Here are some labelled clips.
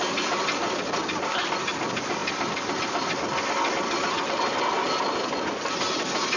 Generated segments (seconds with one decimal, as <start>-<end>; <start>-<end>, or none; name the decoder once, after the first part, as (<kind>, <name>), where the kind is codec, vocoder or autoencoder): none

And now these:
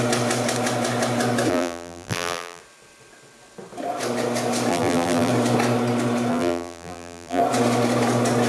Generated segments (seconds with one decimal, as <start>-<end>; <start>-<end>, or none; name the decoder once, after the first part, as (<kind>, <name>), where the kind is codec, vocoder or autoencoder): 1.5-2.6 (vocoder, BigVGAN v2); 4.7-5.3; 6.3-7.4

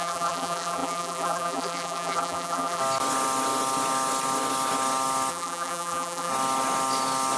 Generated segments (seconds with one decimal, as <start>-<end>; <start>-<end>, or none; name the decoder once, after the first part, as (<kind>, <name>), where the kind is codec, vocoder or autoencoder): 0.0-2.8 (vocoder, BigVGAN v2); 5.3-6.3

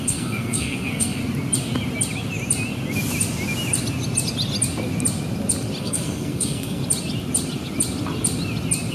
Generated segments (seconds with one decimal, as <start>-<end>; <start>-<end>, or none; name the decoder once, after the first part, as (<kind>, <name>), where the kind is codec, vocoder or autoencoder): 0.0-1.2 (codec, SNAC); 5.8-6.8

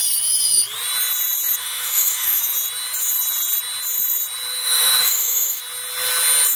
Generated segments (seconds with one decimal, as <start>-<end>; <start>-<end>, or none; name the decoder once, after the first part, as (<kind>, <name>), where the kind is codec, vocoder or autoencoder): 1.6-2.4 (autoencoder, DAC-VAE); 4.6-5.6

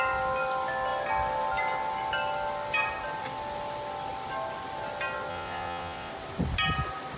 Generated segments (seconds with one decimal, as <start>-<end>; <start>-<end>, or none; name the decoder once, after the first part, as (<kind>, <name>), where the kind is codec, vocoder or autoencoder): 5.3-6.1 (vocoder, Vocos)